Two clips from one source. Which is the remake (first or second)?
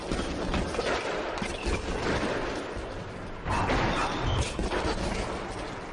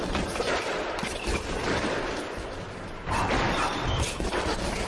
second